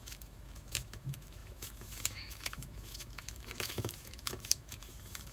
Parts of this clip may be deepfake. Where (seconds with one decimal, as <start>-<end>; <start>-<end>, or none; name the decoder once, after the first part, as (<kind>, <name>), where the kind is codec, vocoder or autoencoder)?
0.0-5.3 (autoencoder, DAC-VAE)